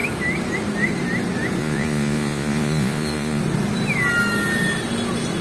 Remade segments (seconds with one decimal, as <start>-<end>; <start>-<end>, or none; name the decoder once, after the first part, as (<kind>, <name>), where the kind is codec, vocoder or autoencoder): 1.6-3.4 (vocoder, Vocos)